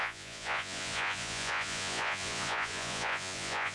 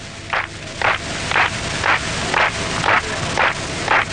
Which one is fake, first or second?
first